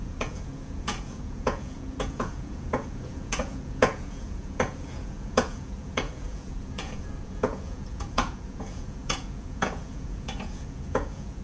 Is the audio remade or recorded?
remade